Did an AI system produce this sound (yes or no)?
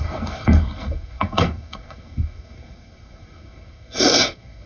yes